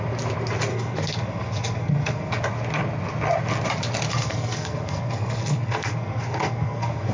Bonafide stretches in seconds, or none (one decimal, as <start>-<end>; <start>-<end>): 0.0-0.7; 2.3-4.1